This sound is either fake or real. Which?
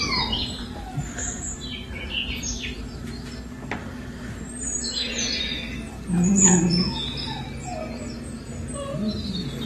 real